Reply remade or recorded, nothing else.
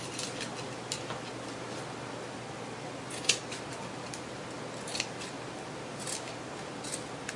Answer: recorded